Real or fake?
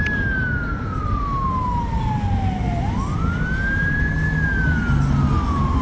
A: real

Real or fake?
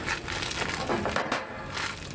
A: real